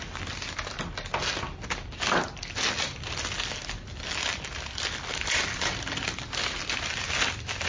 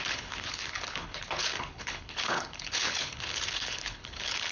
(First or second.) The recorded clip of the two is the first